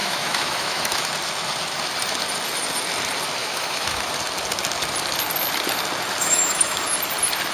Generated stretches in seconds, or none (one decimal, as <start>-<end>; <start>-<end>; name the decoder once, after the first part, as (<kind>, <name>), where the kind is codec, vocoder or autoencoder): 0.0-1.1 (autoencoder, DAC-VAE); 3.4-4.1; 6.2-6.8